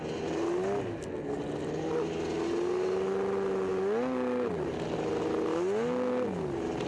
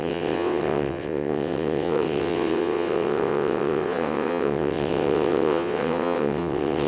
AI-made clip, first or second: second